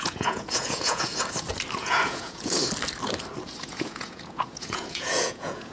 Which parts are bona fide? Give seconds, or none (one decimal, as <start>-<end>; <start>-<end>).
1.1-1.8; 2.6-3.6